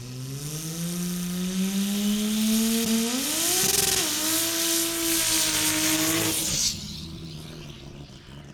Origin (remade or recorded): recorded